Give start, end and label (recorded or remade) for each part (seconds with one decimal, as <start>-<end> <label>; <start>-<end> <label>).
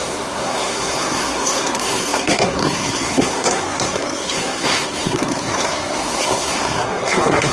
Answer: 0.0-7.5 remade